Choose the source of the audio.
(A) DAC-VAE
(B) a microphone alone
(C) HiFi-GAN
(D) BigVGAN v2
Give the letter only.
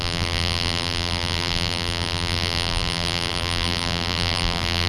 D